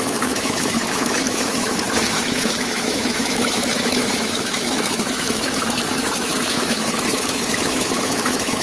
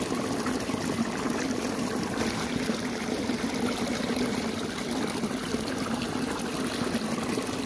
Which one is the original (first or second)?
second